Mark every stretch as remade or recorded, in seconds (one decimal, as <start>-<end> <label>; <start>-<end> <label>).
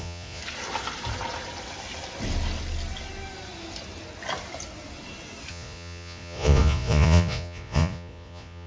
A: 0.0-0.4 remade; 0.4-5.5 recorded; 5.5-8.7 remade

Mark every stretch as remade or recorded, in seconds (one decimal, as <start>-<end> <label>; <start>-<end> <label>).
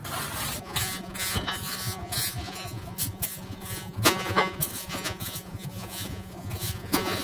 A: 0.0-0.6 recorded; 0.6-7.2 remade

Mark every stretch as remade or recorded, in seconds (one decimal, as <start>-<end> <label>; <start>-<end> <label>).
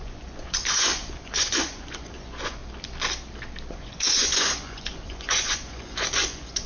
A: 0.0-2.6 remade; 2.6-3.7 recorded; 3.7-6.7 remade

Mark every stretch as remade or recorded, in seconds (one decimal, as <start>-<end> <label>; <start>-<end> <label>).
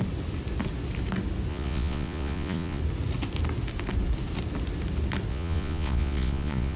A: 0.0-1.5 recorded; 1.5-2.8 remade; 2.8-5.3 recorded; 5.3-6.8 remade